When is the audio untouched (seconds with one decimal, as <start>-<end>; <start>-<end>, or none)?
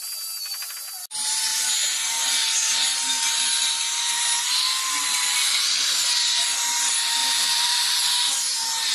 0.0-7.2; 7.8-8.9